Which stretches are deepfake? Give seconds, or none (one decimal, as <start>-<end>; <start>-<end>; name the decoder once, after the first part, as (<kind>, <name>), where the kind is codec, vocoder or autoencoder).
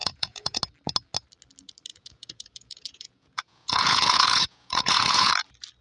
0.0-0.6 (vocoder, Vocos); 1.9-5.3